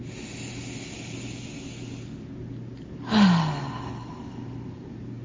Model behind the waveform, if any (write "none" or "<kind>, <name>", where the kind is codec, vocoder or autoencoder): none